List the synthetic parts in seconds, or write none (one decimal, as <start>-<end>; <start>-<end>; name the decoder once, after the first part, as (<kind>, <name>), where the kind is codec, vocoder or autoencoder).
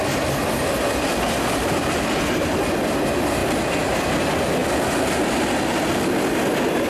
none